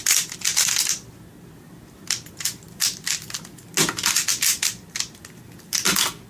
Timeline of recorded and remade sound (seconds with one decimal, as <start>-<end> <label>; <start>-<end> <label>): 0.0-6.3 recorded